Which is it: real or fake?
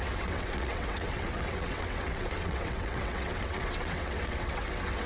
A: fake